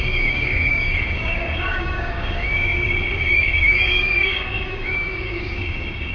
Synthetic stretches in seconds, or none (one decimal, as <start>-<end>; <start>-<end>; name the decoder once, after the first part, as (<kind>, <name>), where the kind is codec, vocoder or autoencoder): 0.0-6.1 (codec, DAC)